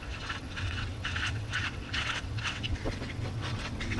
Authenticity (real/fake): fake